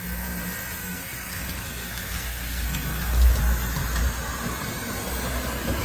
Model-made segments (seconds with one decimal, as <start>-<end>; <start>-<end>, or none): 0.8-3.3